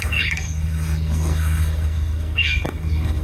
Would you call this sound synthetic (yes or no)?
yes